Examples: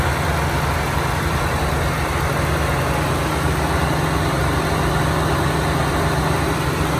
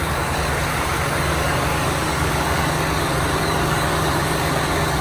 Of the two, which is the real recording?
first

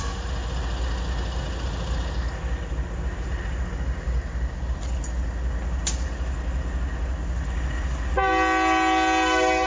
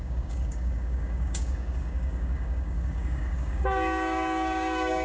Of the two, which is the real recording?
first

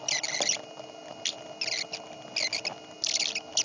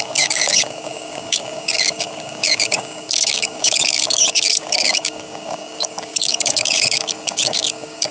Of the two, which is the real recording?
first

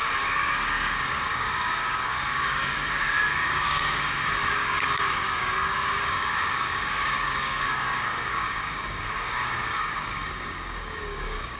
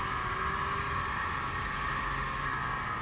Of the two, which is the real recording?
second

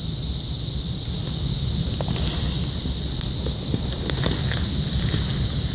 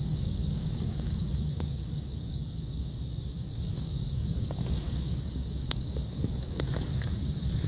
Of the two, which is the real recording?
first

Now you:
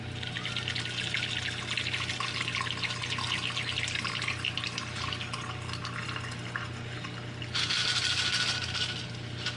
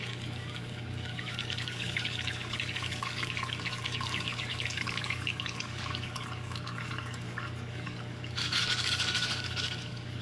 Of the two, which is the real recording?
first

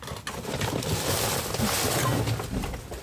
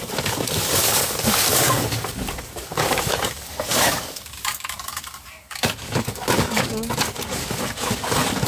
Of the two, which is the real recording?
first